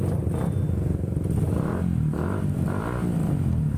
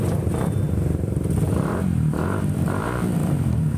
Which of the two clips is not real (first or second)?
second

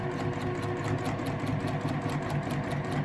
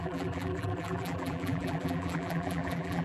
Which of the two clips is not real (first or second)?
second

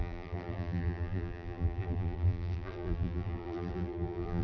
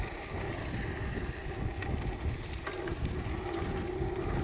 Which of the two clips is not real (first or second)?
first